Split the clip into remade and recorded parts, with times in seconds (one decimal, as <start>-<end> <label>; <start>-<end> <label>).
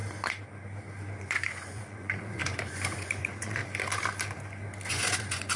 0.0-1.2 recorded; 1.2-3.6 remade; 3.6-4.9 recorded; 4.9-5.6 remade